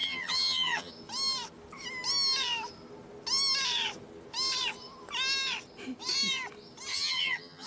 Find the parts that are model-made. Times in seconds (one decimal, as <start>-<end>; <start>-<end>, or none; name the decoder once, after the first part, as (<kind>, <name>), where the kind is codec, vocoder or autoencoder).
0.0-0.9 (vocoder, HiFi-GAN); 6.9-7.7